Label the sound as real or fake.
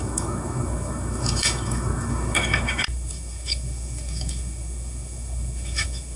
fake